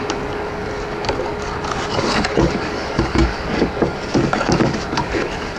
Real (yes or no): no